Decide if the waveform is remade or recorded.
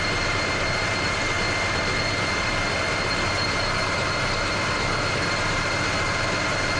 remade